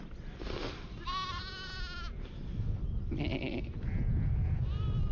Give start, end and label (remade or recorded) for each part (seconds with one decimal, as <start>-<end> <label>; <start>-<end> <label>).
0.0-5.1 recorded